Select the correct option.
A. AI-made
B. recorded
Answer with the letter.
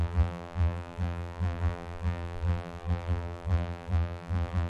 A